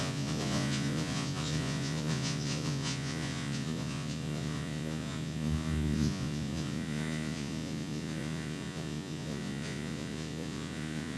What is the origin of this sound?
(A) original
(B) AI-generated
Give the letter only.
B